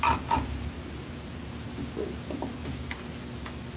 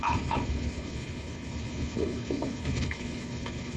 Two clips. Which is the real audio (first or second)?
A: first